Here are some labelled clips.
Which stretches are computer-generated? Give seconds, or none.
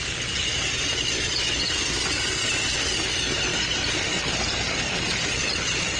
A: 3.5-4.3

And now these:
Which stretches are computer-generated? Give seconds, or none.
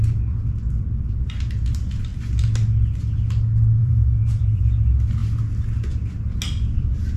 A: 3.8-4.6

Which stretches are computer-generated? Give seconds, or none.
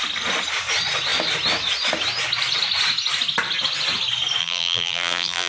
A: 4.4-5.5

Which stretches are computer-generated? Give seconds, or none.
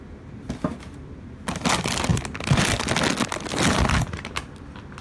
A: none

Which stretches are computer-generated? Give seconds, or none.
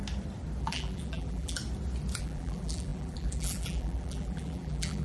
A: 0.6-1.6; 2.2-5.0